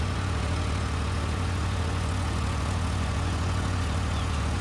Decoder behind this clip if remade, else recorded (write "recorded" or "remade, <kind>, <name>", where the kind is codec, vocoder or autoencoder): remade, vocoder, Vocos